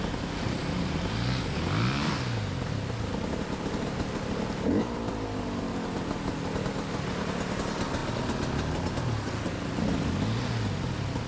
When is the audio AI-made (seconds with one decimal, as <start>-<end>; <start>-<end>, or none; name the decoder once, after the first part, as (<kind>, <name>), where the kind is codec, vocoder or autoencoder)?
none